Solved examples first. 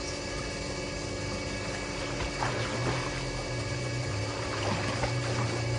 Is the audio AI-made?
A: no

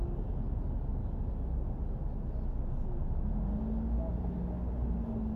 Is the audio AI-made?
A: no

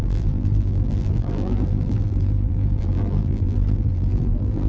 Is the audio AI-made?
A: yes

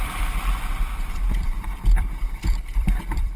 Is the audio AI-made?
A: yes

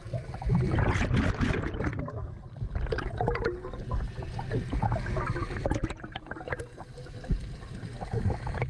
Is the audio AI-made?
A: no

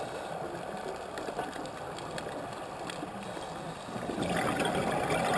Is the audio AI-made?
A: no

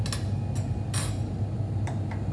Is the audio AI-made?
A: no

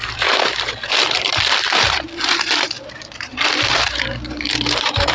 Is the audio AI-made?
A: yes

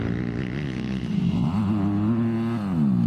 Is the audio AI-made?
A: no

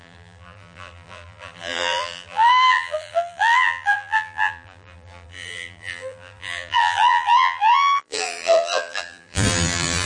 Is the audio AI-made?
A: yes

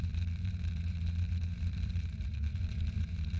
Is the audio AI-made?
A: yes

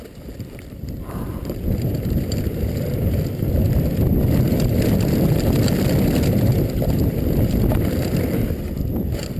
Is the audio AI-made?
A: yes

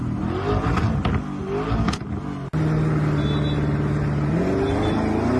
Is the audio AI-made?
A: no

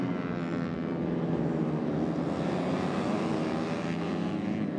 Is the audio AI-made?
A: no